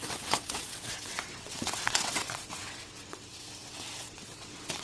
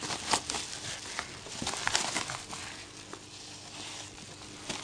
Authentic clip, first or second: second